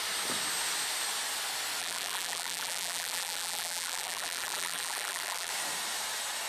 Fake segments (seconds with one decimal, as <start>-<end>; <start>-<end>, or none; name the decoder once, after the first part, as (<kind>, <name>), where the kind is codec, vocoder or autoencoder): 1.8-5.5 (vocoder, BigVGAN v2)

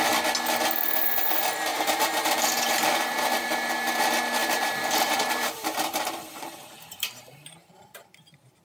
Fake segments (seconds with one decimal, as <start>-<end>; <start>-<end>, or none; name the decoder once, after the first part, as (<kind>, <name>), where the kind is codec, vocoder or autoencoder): 1.7-4.0 (vocoder, BigVGAN v2); 4.4-8.6

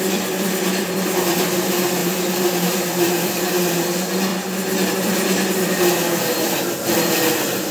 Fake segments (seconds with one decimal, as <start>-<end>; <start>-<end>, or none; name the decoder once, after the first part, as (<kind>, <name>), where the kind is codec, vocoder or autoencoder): 0.0-4.3 (vocoder, BigVGAN v2); 4.9-6.0

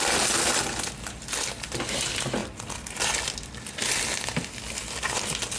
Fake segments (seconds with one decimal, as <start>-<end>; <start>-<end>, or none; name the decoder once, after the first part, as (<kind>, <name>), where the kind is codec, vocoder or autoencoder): none

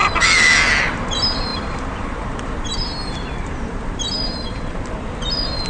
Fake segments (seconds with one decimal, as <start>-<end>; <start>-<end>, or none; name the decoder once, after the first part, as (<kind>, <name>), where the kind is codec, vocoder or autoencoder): 1.5-4.9 (vocoder, BigVGAN v2)

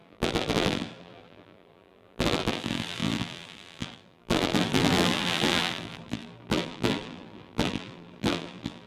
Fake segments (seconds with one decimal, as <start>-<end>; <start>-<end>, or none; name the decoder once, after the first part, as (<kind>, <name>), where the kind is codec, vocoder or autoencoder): 0.0-8.9 (vocoder, BigVGAN v2)